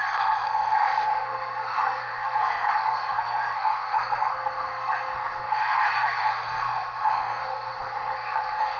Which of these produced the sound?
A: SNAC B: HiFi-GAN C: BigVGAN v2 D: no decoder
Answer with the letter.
A